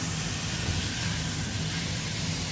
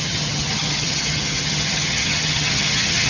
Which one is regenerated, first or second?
second